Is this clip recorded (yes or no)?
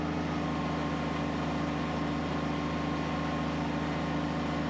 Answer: yes